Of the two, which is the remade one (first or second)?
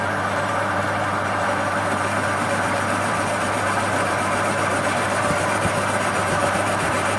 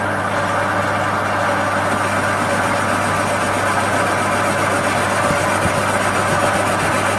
first